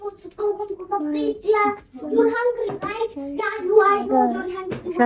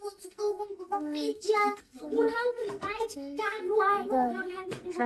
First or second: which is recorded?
first